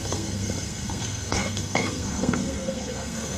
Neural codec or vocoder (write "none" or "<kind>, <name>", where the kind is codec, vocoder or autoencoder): codec, SNAC